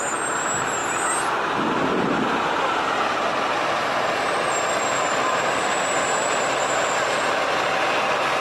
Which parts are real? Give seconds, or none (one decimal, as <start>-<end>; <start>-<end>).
0.0-8.4